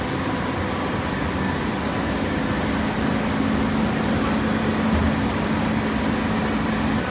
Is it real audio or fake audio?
real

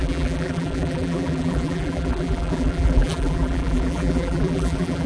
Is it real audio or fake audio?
fake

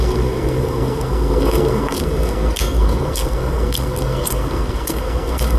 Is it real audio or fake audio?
fake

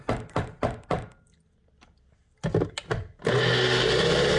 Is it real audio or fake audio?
real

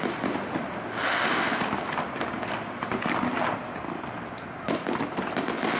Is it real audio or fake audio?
real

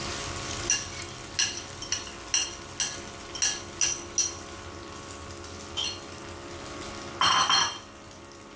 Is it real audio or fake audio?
real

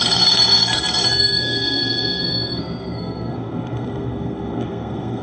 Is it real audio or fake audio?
fake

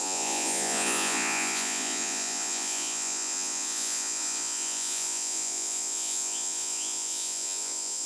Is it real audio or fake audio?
fake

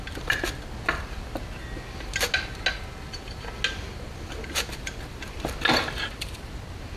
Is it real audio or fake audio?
real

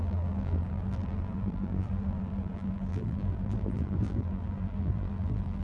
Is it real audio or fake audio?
fake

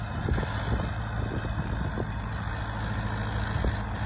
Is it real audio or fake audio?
real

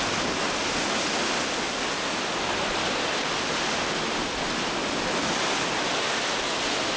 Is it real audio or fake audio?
real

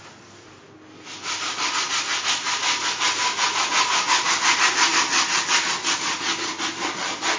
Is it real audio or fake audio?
real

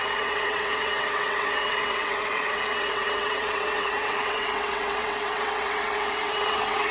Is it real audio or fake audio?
fake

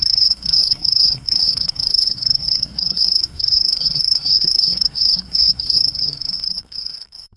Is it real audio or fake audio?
fake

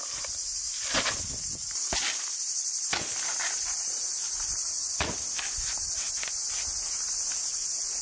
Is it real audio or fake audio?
real